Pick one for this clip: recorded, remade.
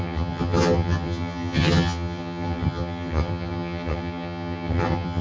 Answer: remade